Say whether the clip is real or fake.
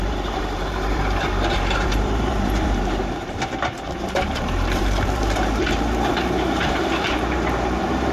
fake